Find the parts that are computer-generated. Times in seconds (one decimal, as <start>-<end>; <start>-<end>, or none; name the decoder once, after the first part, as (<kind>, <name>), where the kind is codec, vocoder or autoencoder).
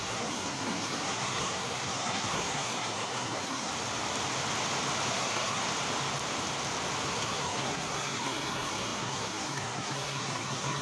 0.0-3.7 (codec, SNAC); 5.1-5.6; 7.1-10.8